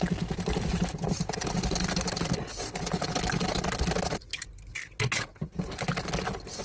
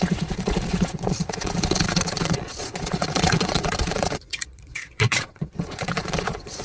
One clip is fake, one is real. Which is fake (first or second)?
second